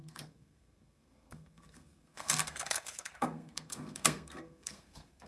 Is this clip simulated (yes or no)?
yes